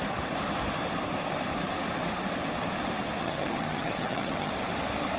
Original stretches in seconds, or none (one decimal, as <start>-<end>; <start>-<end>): 0.0-3.2; 4.5-5.2

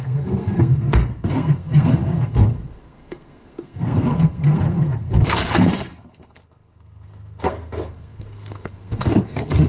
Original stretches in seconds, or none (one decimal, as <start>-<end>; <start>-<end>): none

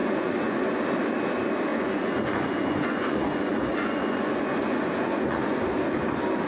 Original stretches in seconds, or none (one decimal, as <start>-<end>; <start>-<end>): 0.6-1.7; 5.6-6.5

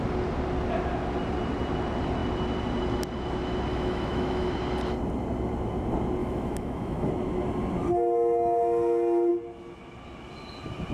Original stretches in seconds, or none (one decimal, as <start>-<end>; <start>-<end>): 0.0-3.7; 4.5-6.2; 7.1-10.9

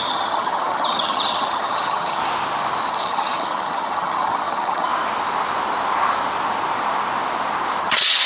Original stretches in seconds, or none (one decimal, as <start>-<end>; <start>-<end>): 2.2-2.9; 4.9-7.8